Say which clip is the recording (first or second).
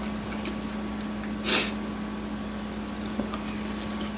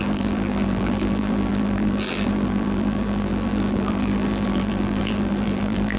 first